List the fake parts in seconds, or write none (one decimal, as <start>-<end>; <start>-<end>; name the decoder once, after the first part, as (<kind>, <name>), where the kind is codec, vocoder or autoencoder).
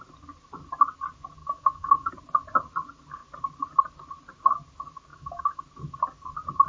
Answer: 1.4-2.1 (autoencoder, DAC-VAE); 5.1-5.6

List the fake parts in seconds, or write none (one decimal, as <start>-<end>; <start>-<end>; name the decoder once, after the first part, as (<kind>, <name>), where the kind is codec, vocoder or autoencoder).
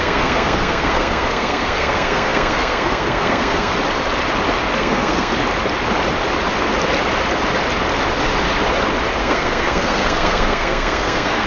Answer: 0.0-3.7 (codec, SNAC); 4.8-5.3; 9.2-11.5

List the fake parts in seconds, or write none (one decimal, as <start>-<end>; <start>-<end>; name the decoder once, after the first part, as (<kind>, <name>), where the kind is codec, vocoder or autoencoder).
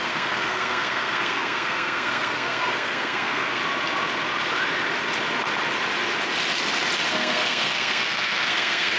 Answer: 0.0-3.6 (codec, SNAC); 7.1-9.0